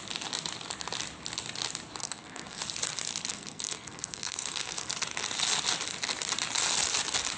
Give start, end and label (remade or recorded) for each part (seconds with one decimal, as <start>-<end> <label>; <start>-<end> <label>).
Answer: 0.0-2.0 recorded; 2.0-2.6 remade; 2.6-3.3 recorded; 3.3-4.9 remade; 4.9-7.4 recorded